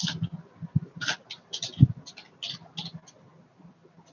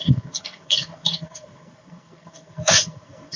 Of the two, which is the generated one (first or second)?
second